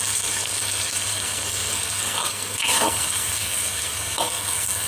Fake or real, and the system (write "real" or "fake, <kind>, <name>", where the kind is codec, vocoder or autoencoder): fake, codec, SNAC